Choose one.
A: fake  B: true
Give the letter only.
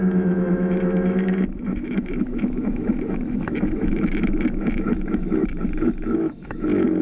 A